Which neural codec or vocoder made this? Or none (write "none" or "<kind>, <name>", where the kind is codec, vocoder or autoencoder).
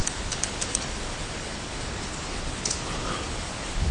codec, HILCodec